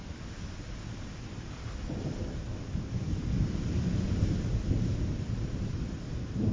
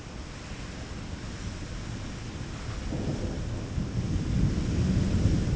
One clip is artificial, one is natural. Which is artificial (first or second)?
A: first